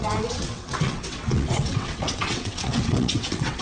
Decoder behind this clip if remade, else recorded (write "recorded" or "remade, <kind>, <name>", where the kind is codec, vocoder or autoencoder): remade, vocoder, WaveNeXt